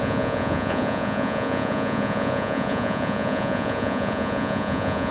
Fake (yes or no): yes